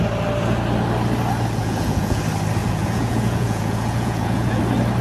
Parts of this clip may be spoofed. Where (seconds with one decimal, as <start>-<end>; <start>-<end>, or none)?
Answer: 1.6-2.2; 2.6-4.6